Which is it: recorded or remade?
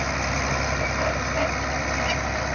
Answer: recorded